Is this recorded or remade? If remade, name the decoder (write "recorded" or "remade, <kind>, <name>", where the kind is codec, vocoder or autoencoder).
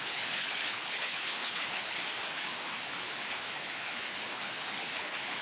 remade, codec, HILCodec